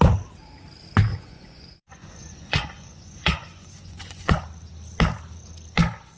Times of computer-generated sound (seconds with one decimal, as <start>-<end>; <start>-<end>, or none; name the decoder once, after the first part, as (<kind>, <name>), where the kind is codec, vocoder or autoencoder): 1.1-4.4 (vocoder, Vocos)